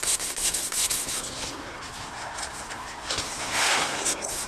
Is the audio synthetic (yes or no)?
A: yes